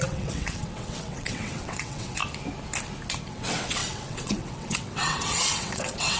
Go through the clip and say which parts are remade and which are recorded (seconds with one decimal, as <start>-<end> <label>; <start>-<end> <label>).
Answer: 0.0-2.2 remade; 2.2-3.3 recorded; 3.3-6.2 remade